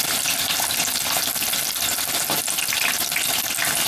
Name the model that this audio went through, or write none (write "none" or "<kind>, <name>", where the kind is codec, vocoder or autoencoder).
none